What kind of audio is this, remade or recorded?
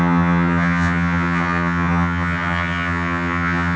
remade